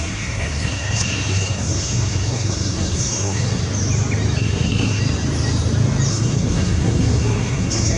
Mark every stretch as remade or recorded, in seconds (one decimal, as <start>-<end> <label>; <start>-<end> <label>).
0.0-3.6 remade; 3.6-4.4 recorded; 4.4-5.0 remade; 5.0-6.1 recorded; 6.1-8.0 remade